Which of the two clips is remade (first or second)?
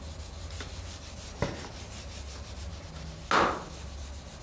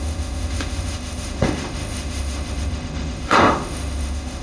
second